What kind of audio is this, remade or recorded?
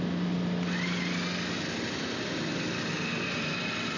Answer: recorded